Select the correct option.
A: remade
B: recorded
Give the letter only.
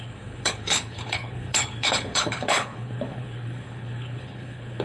A